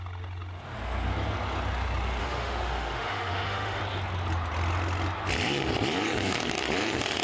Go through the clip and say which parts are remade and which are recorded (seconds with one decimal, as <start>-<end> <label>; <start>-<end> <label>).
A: 0.0-2.2 recorded; 2.2-3.8 remade; 3.8-7.2 recorded